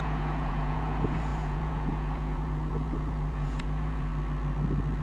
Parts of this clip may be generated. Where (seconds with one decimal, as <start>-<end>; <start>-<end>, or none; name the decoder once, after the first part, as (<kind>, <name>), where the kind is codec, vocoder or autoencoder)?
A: 0.0-4.1 (vocoder, Vocos)